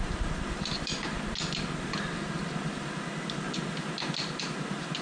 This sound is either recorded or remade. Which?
recorded